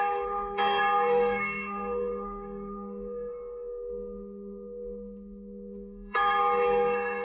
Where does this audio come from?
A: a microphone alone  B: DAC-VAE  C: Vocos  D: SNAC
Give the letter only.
D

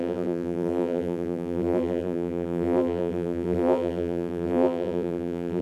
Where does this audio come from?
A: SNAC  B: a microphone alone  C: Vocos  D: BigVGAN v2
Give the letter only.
D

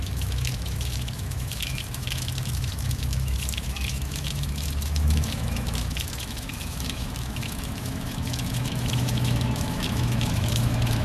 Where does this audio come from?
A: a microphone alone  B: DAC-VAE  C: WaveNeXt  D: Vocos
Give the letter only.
B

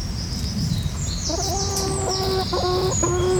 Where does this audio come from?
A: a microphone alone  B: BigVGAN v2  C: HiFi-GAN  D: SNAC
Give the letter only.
A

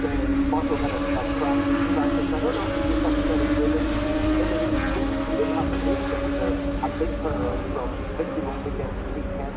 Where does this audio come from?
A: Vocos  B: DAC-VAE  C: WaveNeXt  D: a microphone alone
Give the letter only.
D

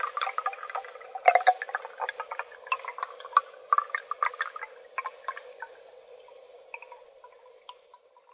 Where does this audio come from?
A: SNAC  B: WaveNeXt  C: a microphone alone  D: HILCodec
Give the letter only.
C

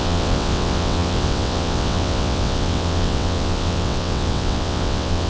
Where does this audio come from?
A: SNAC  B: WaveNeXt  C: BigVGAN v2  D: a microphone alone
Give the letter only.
B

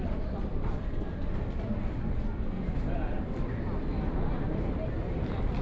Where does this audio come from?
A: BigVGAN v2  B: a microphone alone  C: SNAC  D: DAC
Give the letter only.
B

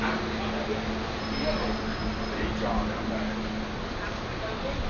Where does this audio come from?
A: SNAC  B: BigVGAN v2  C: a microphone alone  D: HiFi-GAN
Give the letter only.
C